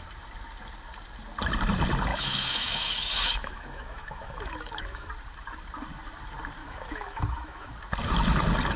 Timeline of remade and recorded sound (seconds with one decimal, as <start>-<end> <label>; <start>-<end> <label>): 0.0-2.1 recorded; 2.1-5.1 remade; 5.1-6.6 recorded; 6.6-7.7 remade; 7.7-8.8 recorded

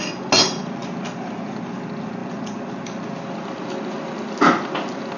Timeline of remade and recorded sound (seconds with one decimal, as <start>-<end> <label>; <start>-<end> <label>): 0.0-5.2 recorded

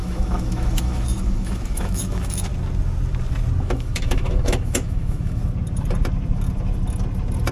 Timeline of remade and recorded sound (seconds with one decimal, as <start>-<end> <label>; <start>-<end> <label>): 0.0-2.5 remade; 2.5-3.6 recorded; 3.6-5.4 remade; 5.4-7.5 recorded

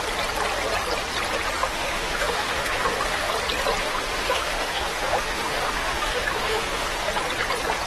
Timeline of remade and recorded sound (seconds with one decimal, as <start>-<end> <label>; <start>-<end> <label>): 0.0-1.6 recorded; 1.6-3.3 remade; 3.3-3.8 recorded; 3.8-7.1 remade; 7.1-7.9 recorded